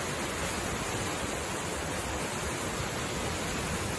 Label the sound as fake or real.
real